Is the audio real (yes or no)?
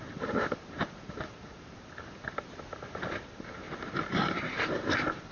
no